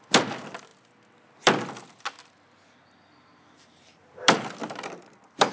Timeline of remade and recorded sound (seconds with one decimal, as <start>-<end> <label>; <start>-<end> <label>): 0.0-5.5 remade